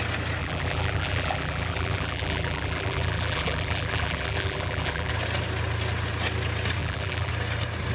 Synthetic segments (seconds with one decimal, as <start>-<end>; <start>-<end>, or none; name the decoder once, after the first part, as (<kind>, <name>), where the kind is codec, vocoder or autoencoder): 0.4-5.1 (vocoder, BigVGAN v2); 6.8-7.3